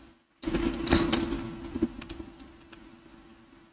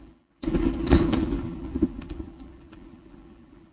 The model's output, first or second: second